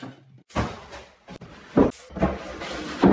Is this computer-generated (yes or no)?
no